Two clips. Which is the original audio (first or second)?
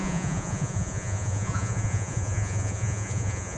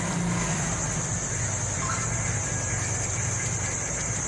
second